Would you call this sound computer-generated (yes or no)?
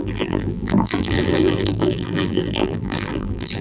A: yes